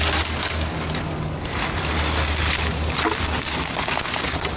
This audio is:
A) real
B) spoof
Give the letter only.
A